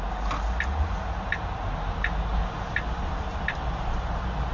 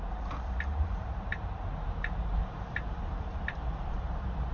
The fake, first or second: second